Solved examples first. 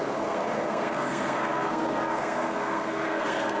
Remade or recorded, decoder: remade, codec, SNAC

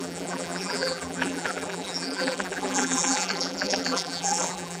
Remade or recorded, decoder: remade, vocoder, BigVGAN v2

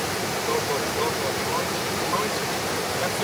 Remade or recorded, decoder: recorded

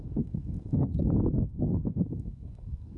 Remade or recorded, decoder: remade, codec, SNAC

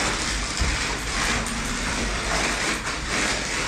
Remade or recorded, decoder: remade, vocoder, BigVGAN v2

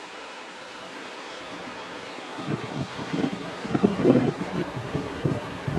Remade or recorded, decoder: remade, codec, SNAC